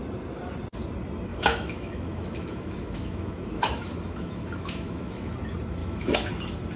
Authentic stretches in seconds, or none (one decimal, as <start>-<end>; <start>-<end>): 0.0-1.3; 5.3-5.8; 6.3-6.8